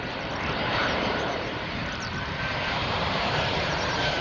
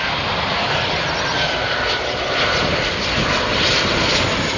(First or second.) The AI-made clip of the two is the first